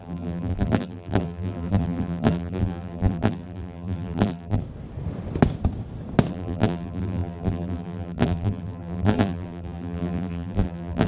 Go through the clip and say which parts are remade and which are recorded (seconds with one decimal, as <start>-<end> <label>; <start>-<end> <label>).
0.0-4.6 remade; 4.6-6.3 recorded; 6.3-11.1 remade

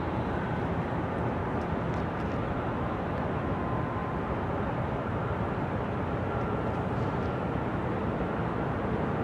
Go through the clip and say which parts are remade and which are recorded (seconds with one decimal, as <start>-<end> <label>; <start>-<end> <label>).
0.0-9.2 recorded